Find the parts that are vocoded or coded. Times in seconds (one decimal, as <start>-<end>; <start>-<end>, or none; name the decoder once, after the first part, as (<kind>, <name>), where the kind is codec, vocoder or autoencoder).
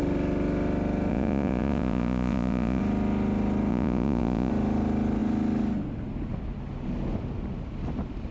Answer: 1.1-2.8 (vocoder, Vocos); 3.7-4.5